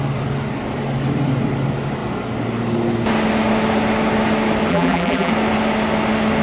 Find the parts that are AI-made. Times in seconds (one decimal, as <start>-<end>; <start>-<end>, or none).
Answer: 4.7-5.3